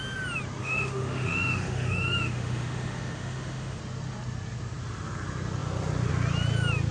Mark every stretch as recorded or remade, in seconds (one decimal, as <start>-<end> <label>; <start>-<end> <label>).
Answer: 0.0-0.6 recorded; 0.6-3.8 remade; 3.8-6.9 recorded